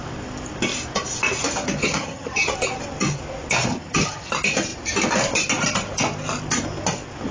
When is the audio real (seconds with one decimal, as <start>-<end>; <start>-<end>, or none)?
0.0-1.8; 2.5-3.7; 4.3-7.3